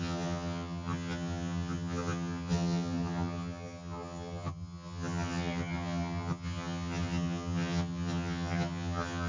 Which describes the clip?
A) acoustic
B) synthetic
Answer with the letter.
B